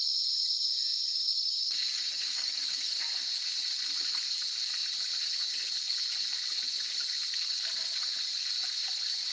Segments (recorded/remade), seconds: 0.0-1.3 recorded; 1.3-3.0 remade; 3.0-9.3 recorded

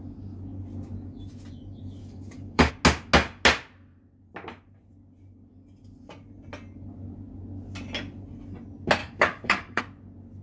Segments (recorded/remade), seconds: 0.0-2.0 recorded; 2.0-2.7 remade; 2.7-9.0 recorded; 9.0-9.8 remade; 9.8-10.4 recorded

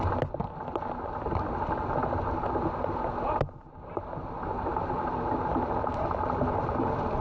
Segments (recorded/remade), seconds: 0.0-7.2 recorded

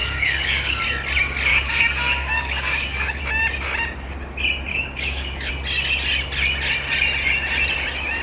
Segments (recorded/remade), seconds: 0.0-0.8 remade; 0.8-1.5 recorded; 1.5-3.2 remade; 3.2-4.7 recorded; 4.7-5.5 remade; 5.5-8.2 recorded

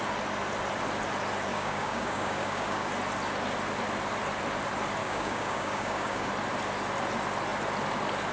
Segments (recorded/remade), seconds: 0.0-1.5 recorded; 1.5-2.9 remade; 2.9-5.0 recorded; 5.0-6.3 remade; 6.3-8.3 recorded

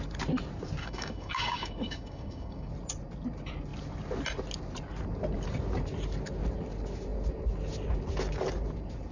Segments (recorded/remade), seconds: 0.0-0.8 recorded; 0.8-2.7 remade; 2.7-9.1 recorded

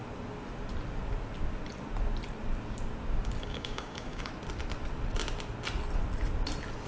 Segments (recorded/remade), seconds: 0.0-3.4 recorded; 3.4-4.3 remade; 4.3-6.9 recorded

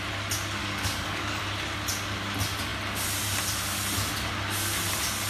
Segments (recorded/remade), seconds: 0.0-0.6 recorded; 0.6-1.4 remade; 1.4-5.3 recorded